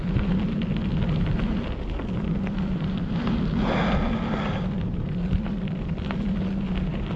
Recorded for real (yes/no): yes